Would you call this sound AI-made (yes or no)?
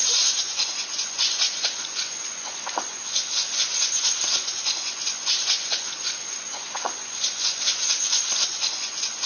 yes